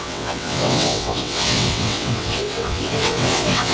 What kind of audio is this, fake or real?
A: fake